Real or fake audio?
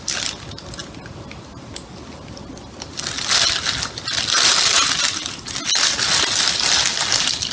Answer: real